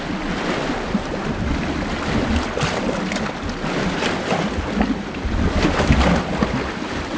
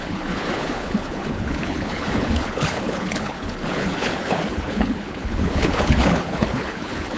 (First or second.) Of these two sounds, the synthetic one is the second